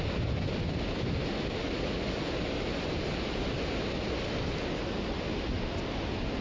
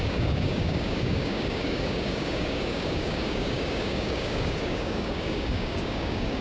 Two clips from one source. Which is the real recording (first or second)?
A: first